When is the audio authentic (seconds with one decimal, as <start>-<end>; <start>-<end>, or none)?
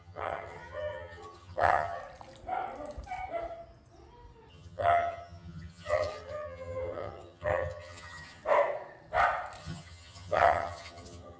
2.0-4.5; 8.4-9.6